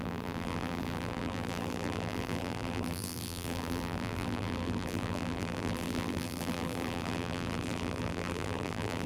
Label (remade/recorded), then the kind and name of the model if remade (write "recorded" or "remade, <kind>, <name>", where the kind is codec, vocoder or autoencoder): remade, vocoder, BigVGAN v2